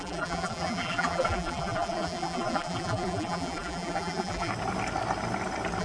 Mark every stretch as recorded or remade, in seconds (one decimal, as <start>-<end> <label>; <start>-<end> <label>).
0.0-4.5 remade; 4.5-5.8 recorded